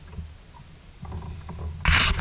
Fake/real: real